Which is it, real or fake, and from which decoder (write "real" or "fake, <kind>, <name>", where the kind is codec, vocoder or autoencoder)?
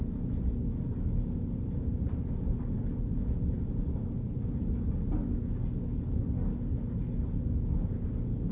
real